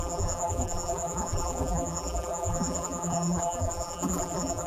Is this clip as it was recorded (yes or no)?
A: no